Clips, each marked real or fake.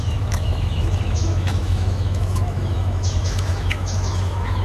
fake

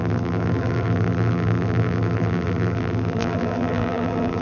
fake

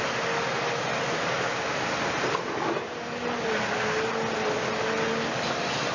real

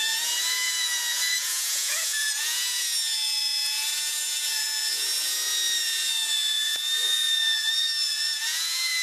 fake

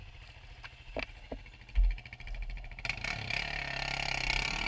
real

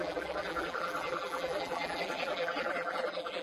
fake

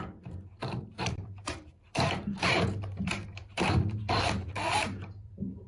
fake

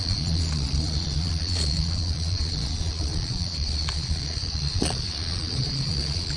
fake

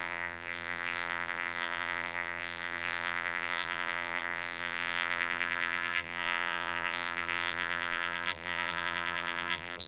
fake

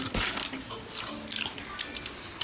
real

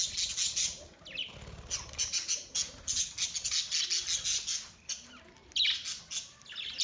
real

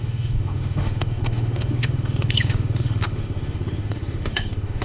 fake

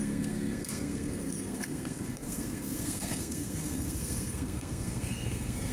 fake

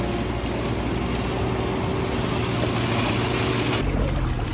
real